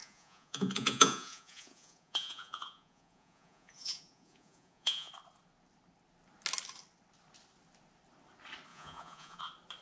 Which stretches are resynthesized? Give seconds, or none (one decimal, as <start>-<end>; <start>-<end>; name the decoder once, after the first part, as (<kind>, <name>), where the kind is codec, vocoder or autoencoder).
0.0-5.1 (vocoder, Vocos); 8.7-9.4

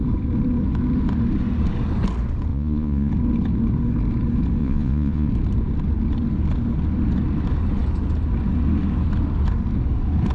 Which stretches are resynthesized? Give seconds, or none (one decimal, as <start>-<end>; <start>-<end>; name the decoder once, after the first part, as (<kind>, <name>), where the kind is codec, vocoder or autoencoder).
2.5-3.1 (vocoder, Vocos); 4.6-5.3

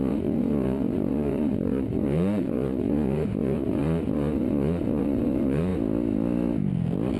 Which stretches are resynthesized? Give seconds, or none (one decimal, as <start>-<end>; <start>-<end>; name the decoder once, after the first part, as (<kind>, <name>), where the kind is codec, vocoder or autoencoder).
0.0-5.7 (vocoder, Vocos)

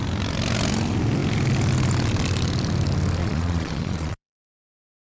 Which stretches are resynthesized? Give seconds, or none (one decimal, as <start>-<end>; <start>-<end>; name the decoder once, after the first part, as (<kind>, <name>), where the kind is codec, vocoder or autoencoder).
3.2-4.5 (vocoder, Vocos)

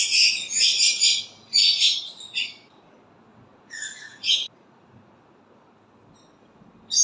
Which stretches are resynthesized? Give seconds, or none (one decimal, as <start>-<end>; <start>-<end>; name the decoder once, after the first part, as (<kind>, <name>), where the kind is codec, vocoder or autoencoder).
1.6-2.9 (vocoder, Vocos); 3.3-5.4

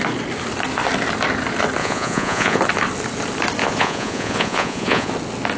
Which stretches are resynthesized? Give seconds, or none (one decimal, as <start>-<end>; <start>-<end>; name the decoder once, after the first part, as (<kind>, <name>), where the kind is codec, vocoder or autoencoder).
1.8-2.6 (vocoder, Vocos); 3.6-5.1

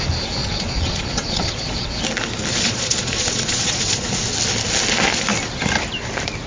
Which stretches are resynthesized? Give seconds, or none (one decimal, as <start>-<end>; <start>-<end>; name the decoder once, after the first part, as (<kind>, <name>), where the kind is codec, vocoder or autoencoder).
0.4-1.9 (vocoder, Vocos); 2.5-4.2

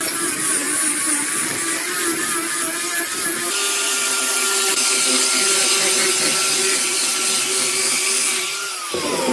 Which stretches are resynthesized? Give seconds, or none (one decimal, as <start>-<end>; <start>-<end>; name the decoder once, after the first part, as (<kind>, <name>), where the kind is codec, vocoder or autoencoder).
none